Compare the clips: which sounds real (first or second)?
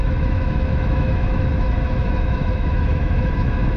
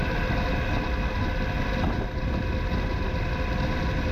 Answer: second